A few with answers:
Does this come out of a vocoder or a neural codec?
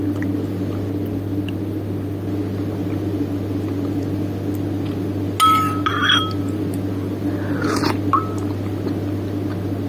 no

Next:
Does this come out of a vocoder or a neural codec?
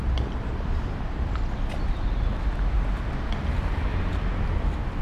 no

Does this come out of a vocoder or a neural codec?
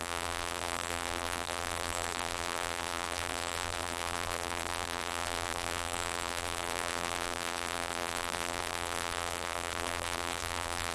yes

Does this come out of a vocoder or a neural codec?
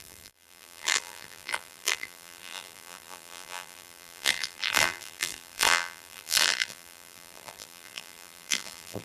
yes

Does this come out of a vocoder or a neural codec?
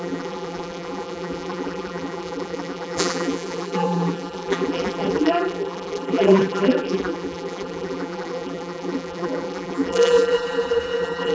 yes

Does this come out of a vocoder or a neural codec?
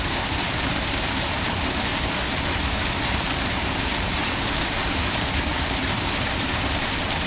yes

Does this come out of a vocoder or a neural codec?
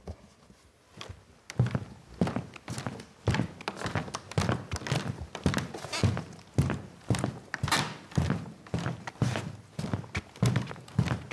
no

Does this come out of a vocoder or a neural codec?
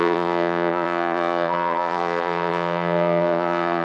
yes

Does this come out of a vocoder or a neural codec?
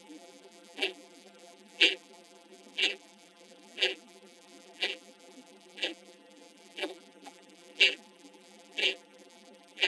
yes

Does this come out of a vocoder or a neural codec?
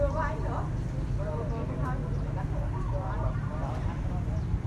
no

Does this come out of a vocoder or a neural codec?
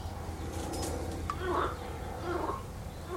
no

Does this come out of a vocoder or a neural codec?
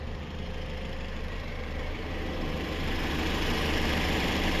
yes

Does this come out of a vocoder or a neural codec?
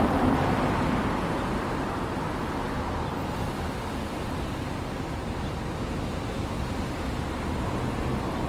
no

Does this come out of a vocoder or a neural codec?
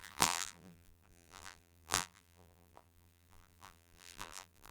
yes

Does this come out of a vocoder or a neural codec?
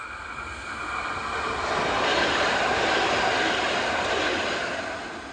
no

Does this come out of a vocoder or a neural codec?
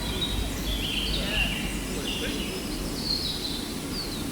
no